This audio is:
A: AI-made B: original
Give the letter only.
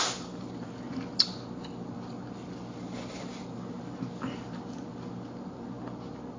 B